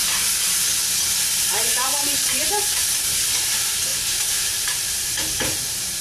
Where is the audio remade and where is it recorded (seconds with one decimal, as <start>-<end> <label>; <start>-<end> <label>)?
0.0-1.7 recorded; 1.7-3.0 remade; 3.0-3.9 recorded; 3.9-6.0 remade